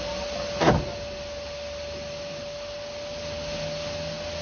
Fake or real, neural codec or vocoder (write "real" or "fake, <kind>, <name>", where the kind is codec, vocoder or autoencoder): real